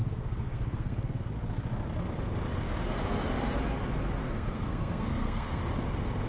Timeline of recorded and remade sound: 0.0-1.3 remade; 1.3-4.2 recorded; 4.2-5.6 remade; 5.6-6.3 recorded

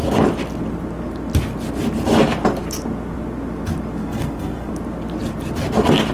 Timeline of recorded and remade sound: 0.0-4.0 recorded; 4.0-4.7 remade; 4.7-6.1 recorded

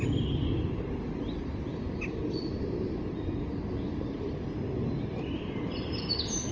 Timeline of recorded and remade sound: 0.0-6.5 recorded

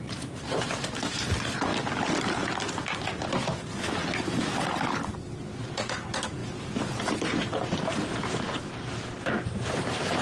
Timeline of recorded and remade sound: 0.0-1.7 remade; 1.7-5.7 recorded; 5.7-6.4 remade; 6.4-7.0 recorded; 7.0-10.2 remade

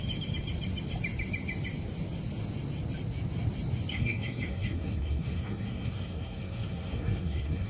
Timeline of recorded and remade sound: 0.0-3.9 recorded; 3.9-7.7 remade